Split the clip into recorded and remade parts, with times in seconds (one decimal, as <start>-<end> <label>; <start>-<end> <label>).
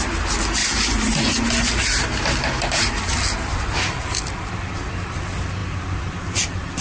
0.0-6.8 recorded